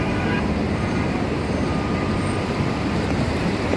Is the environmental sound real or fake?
fake